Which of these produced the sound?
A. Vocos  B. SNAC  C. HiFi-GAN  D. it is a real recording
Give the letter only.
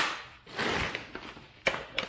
D